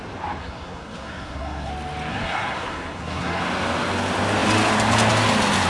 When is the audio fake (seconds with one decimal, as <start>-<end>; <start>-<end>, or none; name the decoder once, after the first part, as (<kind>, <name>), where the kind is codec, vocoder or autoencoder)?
0.4-1.7 (codec, SNAC); 2.1-3.4